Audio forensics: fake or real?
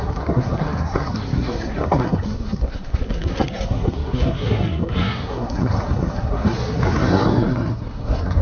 fake